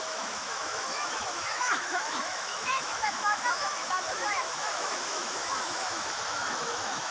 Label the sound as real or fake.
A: fake